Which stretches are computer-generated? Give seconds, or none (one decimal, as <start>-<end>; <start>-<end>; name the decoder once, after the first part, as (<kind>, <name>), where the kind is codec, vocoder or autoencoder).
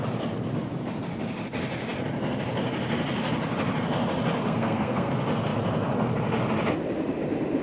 4.4-5.1 (codec, SNAC)